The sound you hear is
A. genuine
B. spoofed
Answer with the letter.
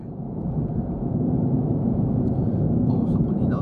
B